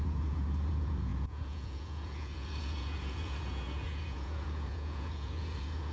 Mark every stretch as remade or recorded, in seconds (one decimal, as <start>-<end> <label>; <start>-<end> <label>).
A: 0.0-5.9 remade